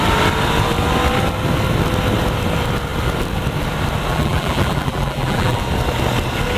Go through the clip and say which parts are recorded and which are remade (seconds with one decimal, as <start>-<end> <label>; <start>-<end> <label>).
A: 0.0-4.1 recorded; 4.1-5.6 remade; 5.6-6.6 recorded